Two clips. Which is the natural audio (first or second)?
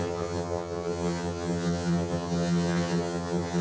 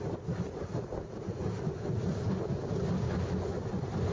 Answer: second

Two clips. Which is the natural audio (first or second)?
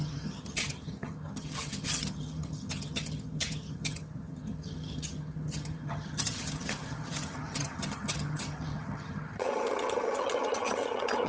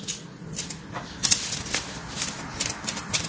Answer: second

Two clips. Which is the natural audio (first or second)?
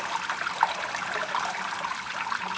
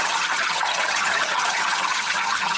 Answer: first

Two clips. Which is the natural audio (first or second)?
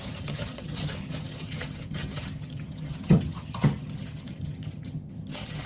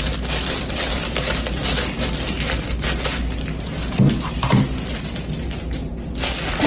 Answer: second